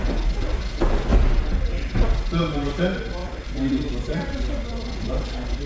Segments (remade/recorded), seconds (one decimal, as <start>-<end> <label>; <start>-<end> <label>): 0.0-3.2 recorded; 3.2-5.1 remade; 5.1-5.7 recorded